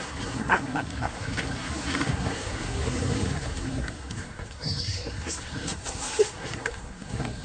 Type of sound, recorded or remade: remade